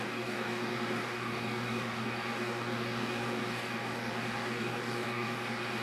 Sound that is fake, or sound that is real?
fake